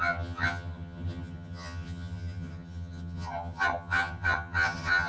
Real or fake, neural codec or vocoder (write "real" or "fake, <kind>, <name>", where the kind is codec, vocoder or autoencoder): fake, vocoder, HiFi-GAN